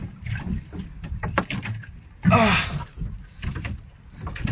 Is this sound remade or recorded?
recorded